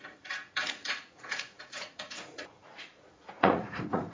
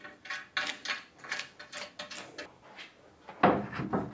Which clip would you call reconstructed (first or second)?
first